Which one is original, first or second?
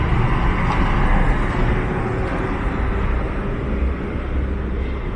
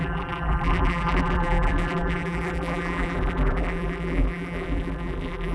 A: first